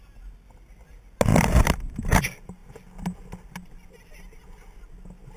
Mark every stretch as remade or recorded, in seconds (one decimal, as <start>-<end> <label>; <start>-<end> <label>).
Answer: 0.0-1.3 recorded; 1.3-2.2 remade; 2.2-5.4 recorded